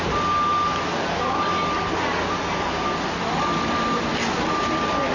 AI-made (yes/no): no